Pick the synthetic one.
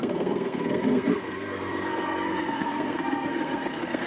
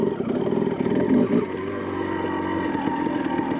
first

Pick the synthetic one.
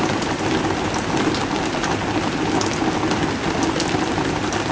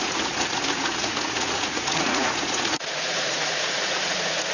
second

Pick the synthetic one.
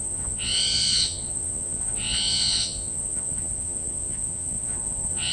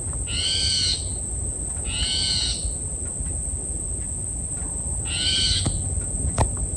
first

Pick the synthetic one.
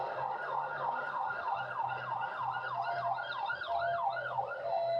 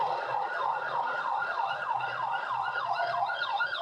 second